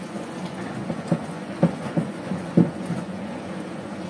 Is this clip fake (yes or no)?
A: yes